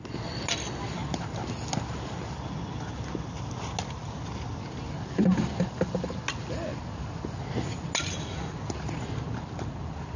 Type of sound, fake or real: real